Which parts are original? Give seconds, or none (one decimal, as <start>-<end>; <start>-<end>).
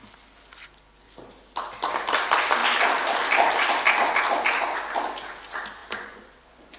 0.0-5.8